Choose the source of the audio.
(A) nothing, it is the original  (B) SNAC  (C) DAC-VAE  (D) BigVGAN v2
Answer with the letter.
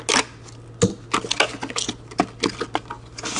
A